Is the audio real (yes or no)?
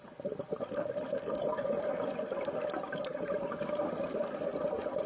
yes